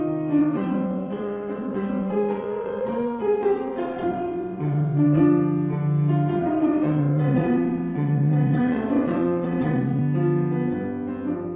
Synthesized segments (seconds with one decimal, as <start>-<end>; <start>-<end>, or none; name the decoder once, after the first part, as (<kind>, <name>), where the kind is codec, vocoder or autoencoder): 0.4-5.2 (vocoder, WaveNeXt); 6.4-10.0